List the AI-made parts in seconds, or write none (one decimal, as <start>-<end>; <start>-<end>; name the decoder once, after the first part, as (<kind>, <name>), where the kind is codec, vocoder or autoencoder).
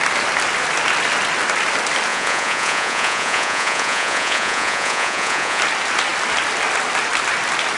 2.1-5.6 (vocoder, Vocos)